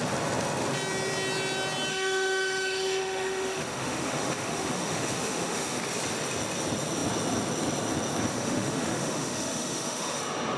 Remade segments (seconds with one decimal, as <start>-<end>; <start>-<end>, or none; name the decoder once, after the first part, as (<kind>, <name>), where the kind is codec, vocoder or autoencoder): 1.9-5.8 (autoencoder, DAC-VAE); 8.3-10.2